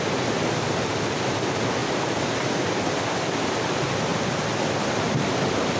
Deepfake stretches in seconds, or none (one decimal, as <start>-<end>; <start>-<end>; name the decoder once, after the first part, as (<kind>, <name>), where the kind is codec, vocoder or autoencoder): 0.0-4.1 (vocoder, BigVGAN v2); 5.1-5.8